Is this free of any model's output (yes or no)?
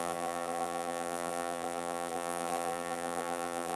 no